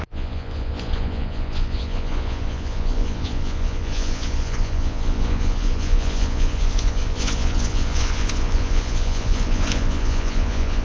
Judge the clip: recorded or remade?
remade